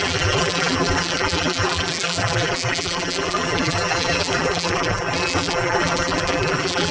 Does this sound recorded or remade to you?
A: remade